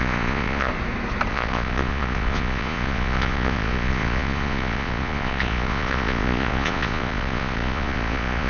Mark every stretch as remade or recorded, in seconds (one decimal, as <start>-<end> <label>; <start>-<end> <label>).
0.0-0.7 remade; 0.7-1.3 recorded; 1.3-8.5 remade